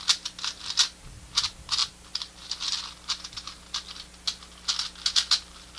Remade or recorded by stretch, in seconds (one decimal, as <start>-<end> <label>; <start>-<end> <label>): 0.0-1.8 recorded; 1.8-2.8 remade; 2.8-5.8 recorded

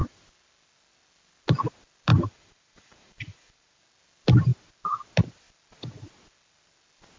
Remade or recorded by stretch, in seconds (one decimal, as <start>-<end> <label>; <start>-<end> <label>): 0.0-2.1 recorded; 2.1-3.8 remade; 3.8-7.2 recorded

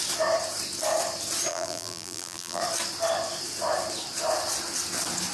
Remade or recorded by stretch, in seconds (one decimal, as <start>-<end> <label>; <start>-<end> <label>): 0.0-1.5 recorded; 1.5-2.6 remade; 2.6-5.3 recorded

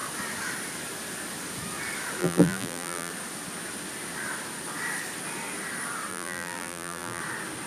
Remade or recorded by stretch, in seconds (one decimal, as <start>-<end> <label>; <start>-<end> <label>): 0.0-2.2 recorded; 2.2-3.1 remade; 3.1-6.1 recorded; 6.1-7.2 remade; 7.2-7.7 recorded

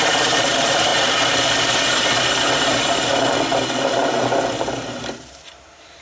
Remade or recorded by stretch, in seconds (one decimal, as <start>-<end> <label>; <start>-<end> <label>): 0.0-3.1 remade; 3.1-4.5 recorded; 4.5-6.0 remade

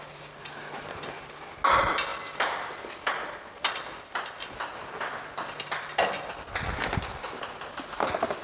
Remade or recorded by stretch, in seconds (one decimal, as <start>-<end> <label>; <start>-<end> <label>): 0.0-8.4 recorded